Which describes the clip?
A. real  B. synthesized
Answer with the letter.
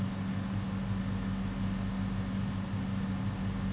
A